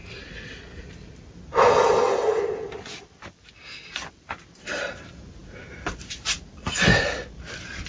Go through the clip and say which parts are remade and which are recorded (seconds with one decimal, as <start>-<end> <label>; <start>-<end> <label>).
0.0-7.9 recorded